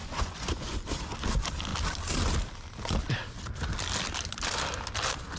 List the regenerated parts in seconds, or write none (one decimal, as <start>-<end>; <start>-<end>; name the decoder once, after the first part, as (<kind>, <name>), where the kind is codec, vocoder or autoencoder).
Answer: 0.0-0.8 (vocoder, Vocos)

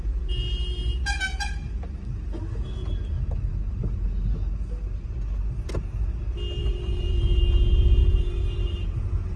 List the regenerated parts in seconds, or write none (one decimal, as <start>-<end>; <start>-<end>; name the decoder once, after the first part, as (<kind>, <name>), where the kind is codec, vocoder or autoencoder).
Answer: 6.6-7.4 (vocoder, BigVGAN v2); 8.0-9.4